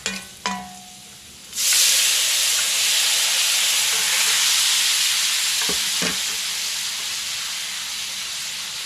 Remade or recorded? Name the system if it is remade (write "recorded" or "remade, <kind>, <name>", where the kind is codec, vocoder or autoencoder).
recorded